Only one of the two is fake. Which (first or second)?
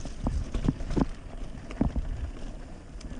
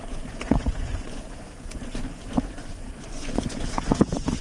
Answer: second